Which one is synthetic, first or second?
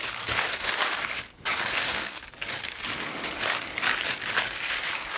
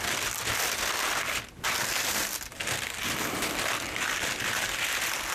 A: first